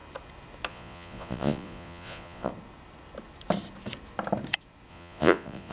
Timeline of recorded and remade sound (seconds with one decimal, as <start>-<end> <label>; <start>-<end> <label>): 0.0-0.7 recorded; 0.7-2.5 remade; 2.5-4.9 recorded; 4.9-5.7 remade